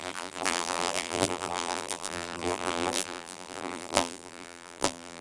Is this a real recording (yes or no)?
no